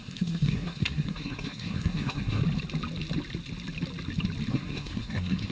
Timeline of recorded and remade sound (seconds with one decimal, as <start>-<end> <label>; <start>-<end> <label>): 0.0-2.4 remade; 2.4-4.5 recorded; 4.5-5.5 remade